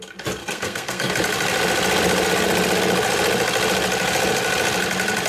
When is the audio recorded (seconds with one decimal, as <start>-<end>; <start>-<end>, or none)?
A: 0.0-0.4; 1.1-5.3